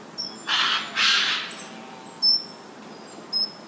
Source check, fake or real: real